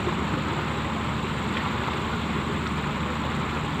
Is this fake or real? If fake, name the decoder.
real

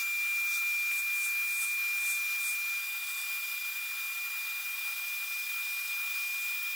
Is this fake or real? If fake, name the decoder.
real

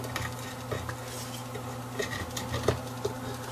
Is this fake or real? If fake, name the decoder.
real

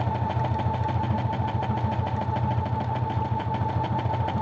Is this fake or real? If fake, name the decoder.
real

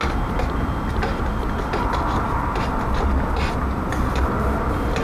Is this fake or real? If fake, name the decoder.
real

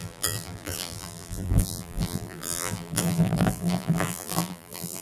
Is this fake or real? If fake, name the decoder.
fake, vocoder, BigVGAN v2